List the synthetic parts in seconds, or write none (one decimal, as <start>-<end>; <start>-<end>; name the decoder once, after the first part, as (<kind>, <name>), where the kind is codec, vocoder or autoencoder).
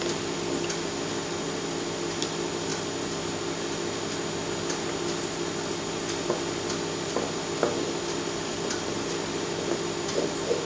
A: 8.5-9.7 (vocoder, BigVGAN v2)